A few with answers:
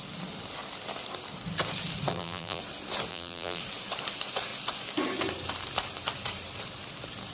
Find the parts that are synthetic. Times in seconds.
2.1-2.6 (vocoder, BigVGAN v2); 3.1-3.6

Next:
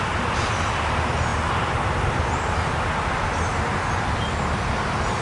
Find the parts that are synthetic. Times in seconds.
0.0-1.3 (vocoder, BigVGAN v2); 3.0-5.2